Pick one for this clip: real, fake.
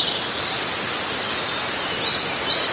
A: real